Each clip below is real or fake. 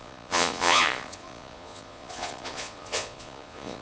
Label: fake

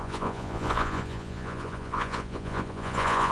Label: fake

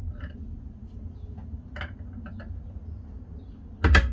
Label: real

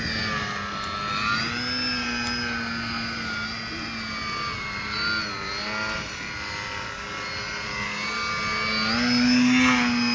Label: real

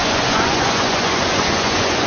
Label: fake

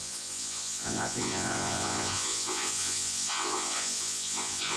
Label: fake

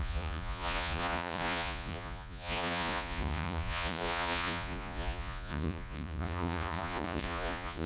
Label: fake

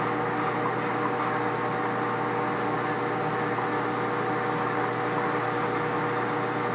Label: real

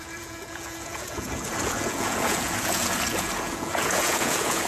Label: fake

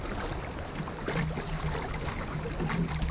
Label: real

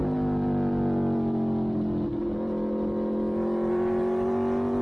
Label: real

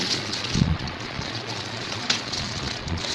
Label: fake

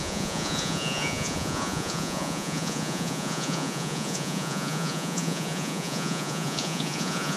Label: fake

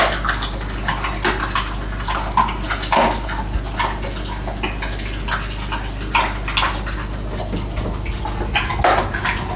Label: real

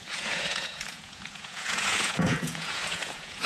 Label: fake